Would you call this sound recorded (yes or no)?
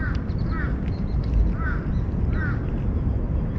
yes